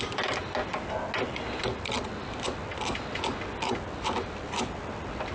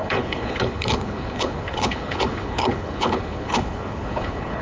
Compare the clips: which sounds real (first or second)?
first